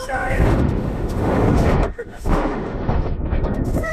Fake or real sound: fake